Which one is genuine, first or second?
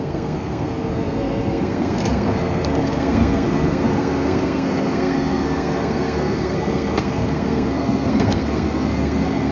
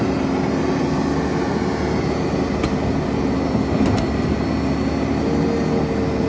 second